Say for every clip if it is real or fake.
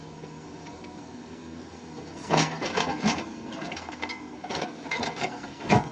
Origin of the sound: fake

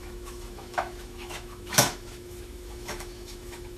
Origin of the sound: fake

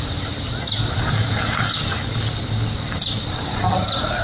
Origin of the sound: real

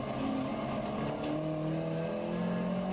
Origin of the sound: real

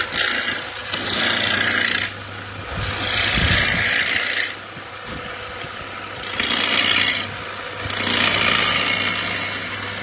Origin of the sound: real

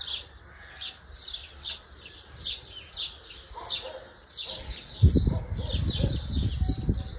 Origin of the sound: real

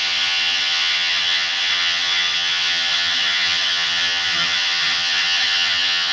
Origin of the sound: fake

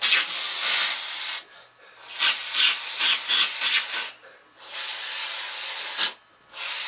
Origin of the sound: real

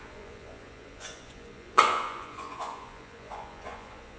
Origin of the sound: fake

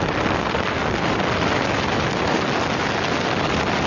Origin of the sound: real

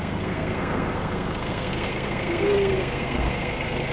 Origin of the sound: fake